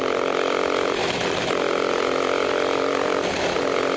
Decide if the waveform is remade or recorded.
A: remade